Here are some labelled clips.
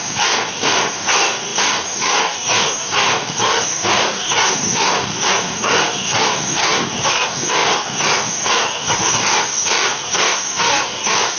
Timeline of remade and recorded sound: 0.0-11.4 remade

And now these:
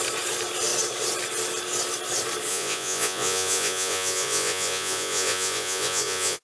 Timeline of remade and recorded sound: 0.0-2.5 recorded; 2.5-6.4 remade

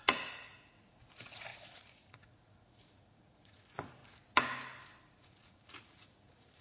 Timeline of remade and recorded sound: 0.0-4.0 remade; 4.0-5.0 recorded; 5.0-6.6 remade

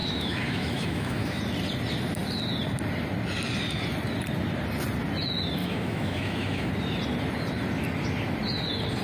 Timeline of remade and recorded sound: 0.0-1.4 remade; 1.4-5.6 recorded; 5.6-6.7 remade; 6.7-9.0 recorded

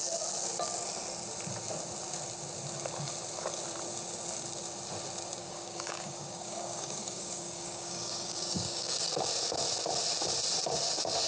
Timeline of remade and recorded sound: 0.0-5.4 recorded; 5.4-9.1 remade; 9.1-11.3 recorded

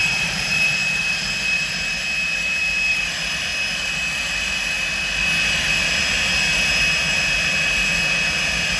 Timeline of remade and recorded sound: 0.0-0.8 remade; 0.8-1.4 recorded; 1.4-1.9 remade; 1.9-2.9 recorded; 2.9-3.5 remade; 3.5-8.8 recorded